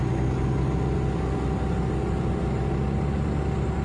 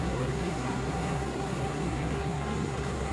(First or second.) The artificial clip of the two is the second